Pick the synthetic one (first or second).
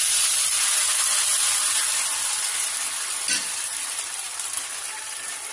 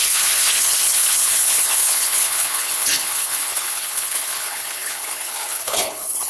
second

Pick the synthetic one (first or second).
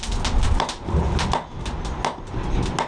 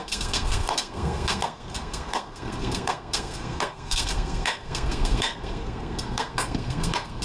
second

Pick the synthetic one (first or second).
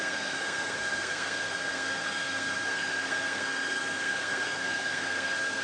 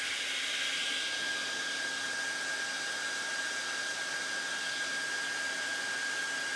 first